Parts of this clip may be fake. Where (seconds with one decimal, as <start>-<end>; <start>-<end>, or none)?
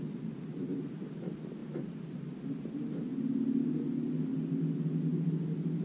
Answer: none